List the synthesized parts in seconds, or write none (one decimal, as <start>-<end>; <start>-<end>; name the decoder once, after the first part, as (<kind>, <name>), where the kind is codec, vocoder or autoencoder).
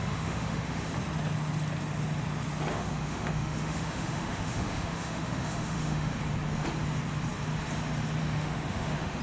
0.0-0.9 (autoencoder, DAC-VAE); 2.7-6.2; 8.2-9.2